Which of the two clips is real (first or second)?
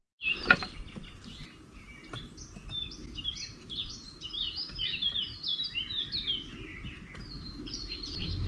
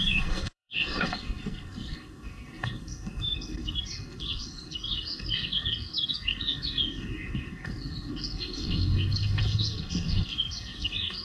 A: first